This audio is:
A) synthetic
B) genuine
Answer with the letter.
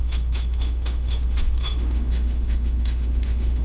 A